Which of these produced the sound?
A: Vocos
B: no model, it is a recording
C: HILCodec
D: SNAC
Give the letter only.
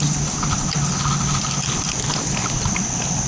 B